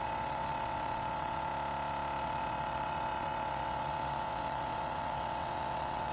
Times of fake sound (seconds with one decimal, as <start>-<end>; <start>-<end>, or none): 0.0-1.5; 2.2-6.1